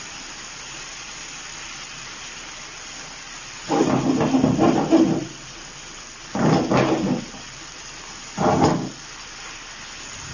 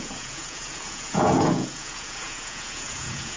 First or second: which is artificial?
second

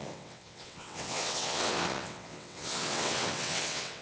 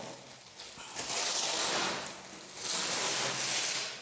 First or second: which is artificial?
first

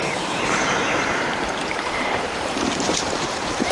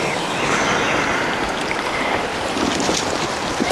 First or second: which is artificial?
first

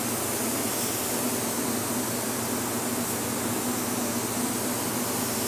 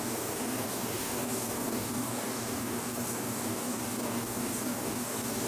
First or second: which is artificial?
second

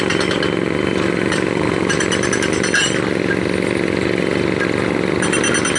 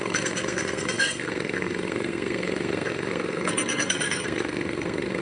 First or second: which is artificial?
second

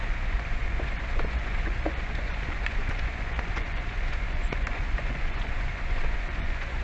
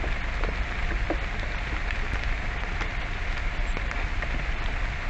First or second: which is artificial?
first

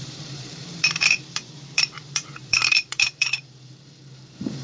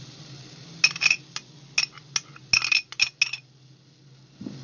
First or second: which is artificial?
first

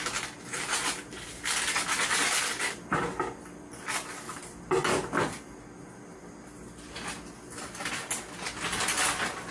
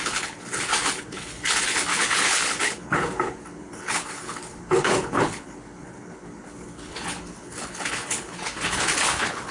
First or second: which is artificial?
second